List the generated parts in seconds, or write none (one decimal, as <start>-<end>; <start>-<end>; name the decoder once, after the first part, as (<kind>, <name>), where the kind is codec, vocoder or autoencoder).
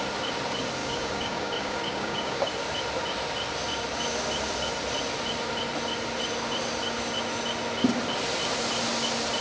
0.8-2.5 (codec, DAC)